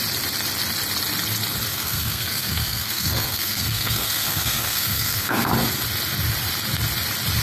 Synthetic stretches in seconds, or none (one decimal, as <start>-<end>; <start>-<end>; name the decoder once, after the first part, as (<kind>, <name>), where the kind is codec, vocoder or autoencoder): 1.7-5.5 (codec, SNAC)